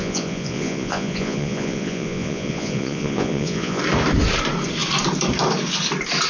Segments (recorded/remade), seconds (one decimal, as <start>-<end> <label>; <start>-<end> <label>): 0.0-3.8 remade; 3.8-6.3 recorded